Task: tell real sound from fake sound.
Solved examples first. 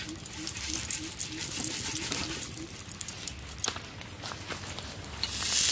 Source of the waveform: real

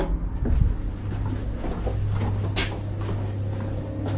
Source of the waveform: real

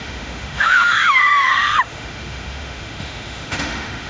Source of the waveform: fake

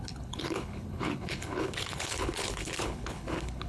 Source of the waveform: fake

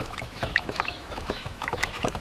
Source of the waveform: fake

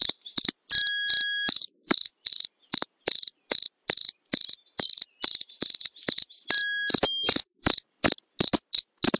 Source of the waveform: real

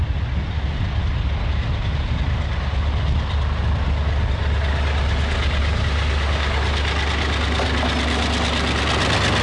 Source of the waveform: real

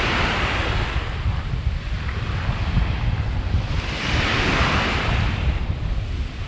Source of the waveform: real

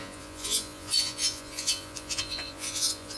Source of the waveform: fake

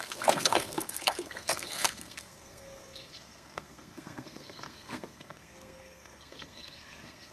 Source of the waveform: fake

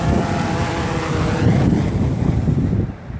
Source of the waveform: real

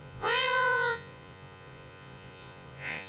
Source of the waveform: fake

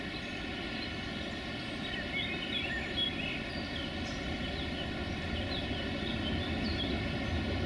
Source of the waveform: real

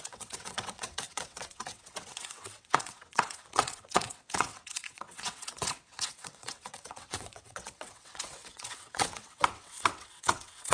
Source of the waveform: fake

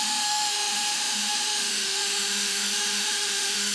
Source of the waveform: fake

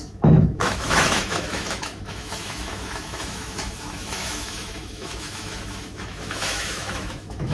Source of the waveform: fake